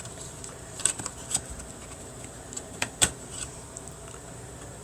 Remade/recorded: remade